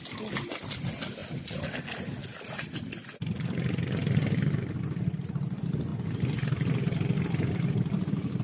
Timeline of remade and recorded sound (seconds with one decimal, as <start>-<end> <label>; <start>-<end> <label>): 0.0-8.4 recorded